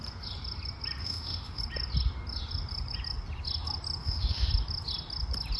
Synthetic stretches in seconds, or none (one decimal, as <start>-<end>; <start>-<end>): 1.0-1.6; 4.0-4.5